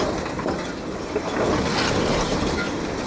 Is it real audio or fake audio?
real